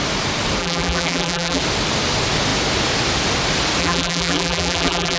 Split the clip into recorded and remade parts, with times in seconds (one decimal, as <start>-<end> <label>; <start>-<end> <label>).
0.0-0.6 recorded; 0.6-1.6 remade; 1.6-3.8 recorded; 3.8-5.2 remade